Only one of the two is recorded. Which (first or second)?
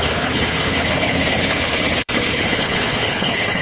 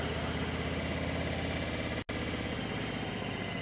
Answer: second